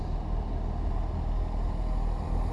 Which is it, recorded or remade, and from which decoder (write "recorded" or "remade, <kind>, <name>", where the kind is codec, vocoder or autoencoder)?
recorded